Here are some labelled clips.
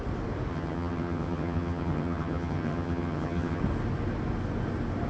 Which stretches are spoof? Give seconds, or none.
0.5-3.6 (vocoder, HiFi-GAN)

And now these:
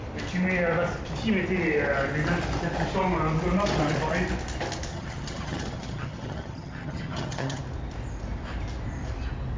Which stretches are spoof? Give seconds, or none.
4.9-7.6 (vocoder, HiFi-GAN)

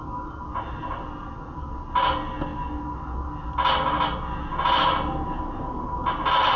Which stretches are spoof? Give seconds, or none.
none